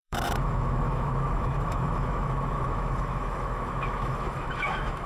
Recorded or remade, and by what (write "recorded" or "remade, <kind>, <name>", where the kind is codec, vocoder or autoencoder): remade, autoencoder, DAC-VAE